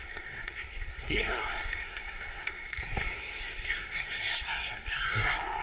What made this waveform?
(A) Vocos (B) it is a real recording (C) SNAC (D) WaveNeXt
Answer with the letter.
C